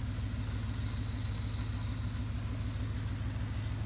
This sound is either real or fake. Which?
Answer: real